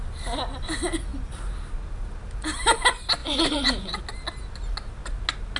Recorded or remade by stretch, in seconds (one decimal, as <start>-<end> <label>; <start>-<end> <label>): 0.0-3.2 recorded; 3.2-4.0 remade; 4.0-5.6 recorded